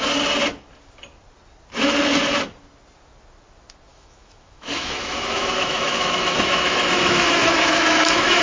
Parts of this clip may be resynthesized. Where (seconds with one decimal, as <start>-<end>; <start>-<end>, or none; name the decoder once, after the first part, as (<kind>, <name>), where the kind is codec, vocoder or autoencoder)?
3.9-8.4 (autoencoder, DAC-VAE)